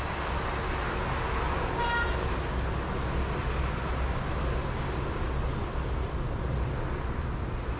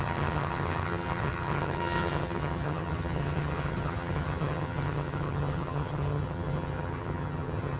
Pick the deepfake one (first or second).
second